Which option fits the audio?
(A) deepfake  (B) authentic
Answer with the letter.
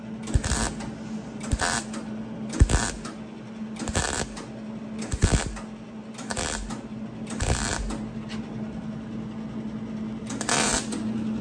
B